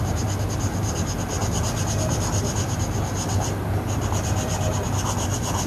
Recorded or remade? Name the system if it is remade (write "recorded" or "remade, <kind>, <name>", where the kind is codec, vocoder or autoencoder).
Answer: recorded